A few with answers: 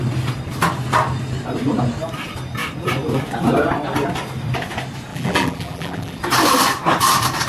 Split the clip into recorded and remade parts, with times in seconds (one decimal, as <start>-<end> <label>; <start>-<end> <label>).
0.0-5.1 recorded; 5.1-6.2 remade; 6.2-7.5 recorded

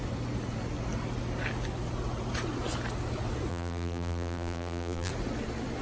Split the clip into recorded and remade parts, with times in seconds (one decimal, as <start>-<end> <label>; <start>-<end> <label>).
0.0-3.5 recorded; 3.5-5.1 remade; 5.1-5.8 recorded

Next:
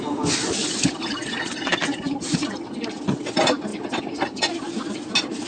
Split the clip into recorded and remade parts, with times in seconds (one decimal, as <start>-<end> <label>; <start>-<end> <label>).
0.0-3.7 recorded; 3.7-4.8 remade; 4.8-5.5 recorded

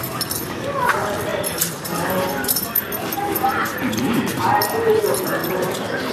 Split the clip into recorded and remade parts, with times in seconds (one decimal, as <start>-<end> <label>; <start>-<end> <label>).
0.0-1.3 recorded; 1.3-5.0 remade; 5.0-5.4 recorded; 5.4-6.1 remade